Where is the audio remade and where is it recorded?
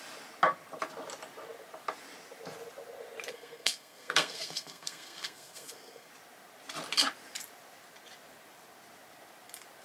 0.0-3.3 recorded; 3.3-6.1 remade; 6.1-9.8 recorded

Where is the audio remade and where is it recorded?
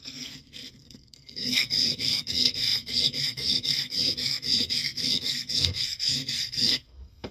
0.0-7.3 remade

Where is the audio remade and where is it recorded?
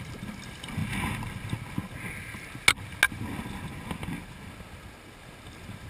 0.0-5.9 recorded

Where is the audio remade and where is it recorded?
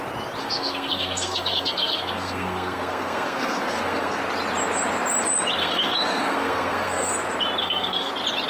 0.0-0.4 recorded; 0.4-4.2 remade; 4.2-5.6 recorded; 5.6-7.1 remade; 7.1-7.6 recorded; 7.6-8.1 remade; 8.1-8.5 recorded